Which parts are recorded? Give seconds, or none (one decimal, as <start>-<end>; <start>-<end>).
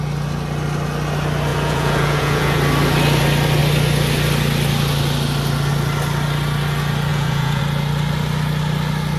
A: 0.0-1.5; 2.6-7.1; 7.6-9.2